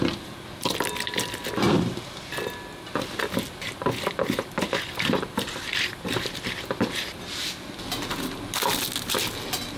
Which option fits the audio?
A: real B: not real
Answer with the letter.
A